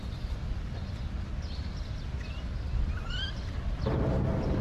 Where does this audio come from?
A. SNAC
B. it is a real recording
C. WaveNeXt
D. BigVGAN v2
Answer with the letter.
B